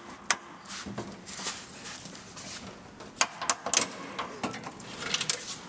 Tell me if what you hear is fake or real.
real